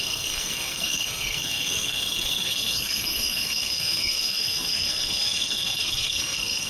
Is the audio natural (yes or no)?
no